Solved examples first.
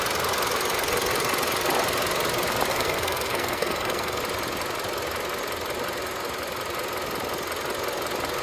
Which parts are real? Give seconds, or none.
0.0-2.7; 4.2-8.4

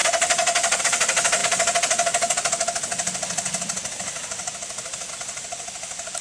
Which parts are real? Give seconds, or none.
0.0-6.2